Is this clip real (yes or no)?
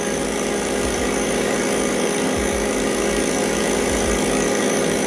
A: no